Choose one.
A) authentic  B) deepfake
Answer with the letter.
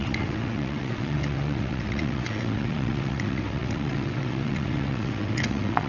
B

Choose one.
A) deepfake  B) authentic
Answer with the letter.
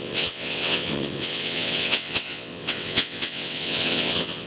A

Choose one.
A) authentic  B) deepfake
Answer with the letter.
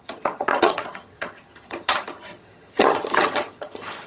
B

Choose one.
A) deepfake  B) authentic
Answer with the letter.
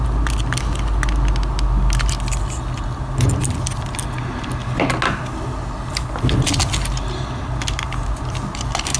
B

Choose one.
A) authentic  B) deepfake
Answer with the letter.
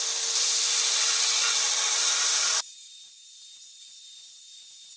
B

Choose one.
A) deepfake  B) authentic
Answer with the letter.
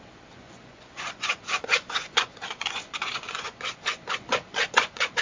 A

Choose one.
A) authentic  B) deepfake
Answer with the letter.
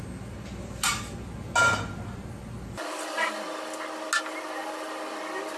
A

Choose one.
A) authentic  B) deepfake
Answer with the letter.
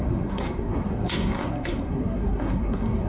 B